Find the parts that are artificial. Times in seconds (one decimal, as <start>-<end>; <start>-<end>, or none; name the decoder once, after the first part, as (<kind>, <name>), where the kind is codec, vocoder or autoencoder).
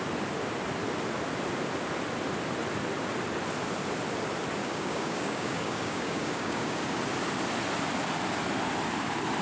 4.6-7.0 (codec, DAC)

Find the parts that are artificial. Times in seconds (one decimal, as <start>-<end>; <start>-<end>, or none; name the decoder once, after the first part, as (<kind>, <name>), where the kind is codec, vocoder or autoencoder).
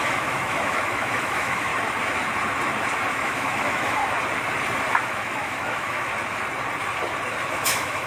0.0-1.7 (autoencoder, DAC-VAE); 3.1-4.0; 4.9-6.1; 7.5-8.1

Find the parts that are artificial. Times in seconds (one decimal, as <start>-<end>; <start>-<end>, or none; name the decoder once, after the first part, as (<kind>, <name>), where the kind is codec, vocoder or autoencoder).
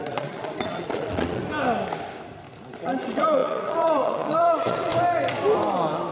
0.0-1.4 (vocoder, Vocos); 2.7-4.9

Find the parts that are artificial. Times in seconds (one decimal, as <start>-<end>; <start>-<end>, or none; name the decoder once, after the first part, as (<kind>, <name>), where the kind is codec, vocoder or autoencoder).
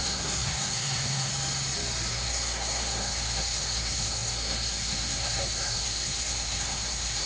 0.0-1.3 (codec, SNAC); 2.1-7.3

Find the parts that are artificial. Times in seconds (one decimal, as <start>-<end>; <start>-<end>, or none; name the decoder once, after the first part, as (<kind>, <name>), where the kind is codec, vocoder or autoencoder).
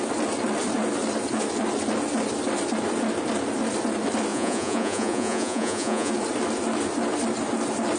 4.3-6.1 (vocoder, Vocos)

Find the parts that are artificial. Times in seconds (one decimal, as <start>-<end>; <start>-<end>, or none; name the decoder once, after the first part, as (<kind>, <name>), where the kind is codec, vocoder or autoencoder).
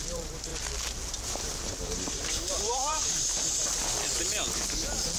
0.0-0.5 (vocoder, BigVGAN v2); 1.6-3.8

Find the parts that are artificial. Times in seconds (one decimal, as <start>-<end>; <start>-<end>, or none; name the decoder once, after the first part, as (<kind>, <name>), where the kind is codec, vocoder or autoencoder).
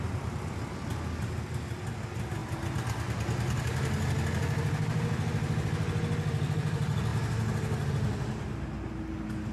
none